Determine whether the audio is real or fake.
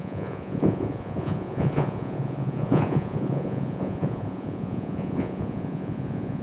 fake